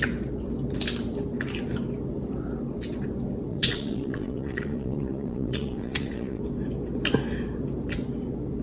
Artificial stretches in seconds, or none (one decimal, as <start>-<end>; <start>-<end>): 3.5-6.4